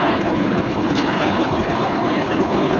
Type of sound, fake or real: fake